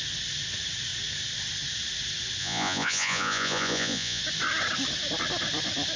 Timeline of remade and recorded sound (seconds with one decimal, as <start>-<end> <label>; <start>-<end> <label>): 0.0-2.4 recorded; 2.4-4.2 remade; 4.2-6.0 recorded